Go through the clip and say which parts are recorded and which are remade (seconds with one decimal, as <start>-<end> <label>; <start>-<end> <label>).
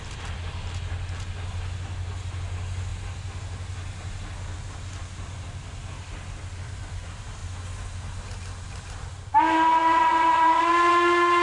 0.0-9.8 recorded; 9.8-10.9 remade; 10.9-11.4 recorded